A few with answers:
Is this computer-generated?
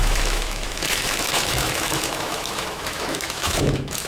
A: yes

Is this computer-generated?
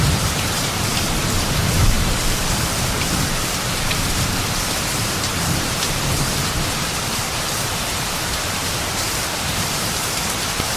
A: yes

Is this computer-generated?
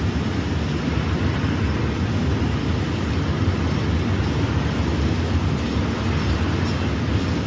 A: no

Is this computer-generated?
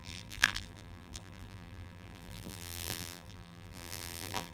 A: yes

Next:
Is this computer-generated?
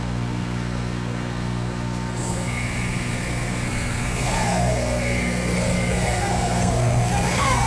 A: yes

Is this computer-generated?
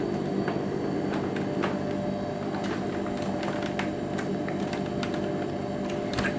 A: no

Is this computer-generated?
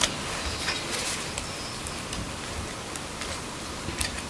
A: no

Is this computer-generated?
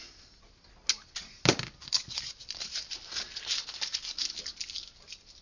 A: no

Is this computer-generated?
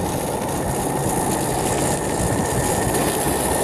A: no